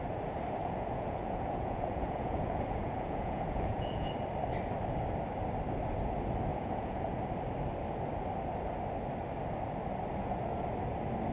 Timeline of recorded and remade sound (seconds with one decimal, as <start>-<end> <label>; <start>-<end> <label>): 0.0-0.6 recorded; 0.6-4.1 remade; 4.1-6.5 recorded; 6.5-7.2 remade; 7.2-11.3 recorded